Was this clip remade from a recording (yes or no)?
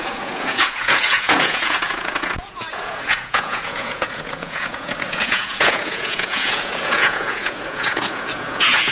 yes